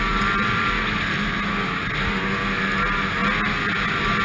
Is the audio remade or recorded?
recorded